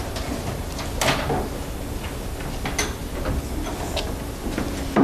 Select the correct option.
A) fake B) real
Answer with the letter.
B